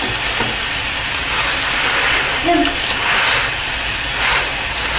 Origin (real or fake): real